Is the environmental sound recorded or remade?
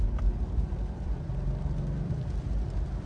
remade